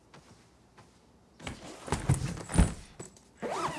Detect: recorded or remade recorded